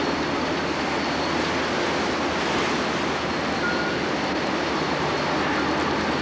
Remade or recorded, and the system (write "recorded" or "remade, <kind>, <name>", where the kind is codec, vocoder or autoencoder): recorded